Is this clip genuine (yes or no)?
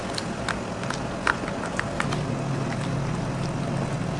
yes